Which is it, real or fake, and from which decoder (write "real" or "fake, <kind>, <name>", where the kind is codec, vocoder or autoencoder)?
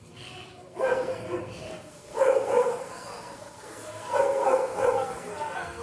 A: fake, codec, SNAC